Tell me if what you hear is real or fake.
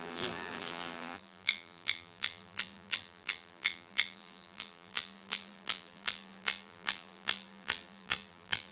fake